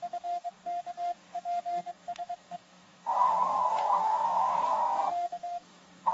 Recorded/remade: remade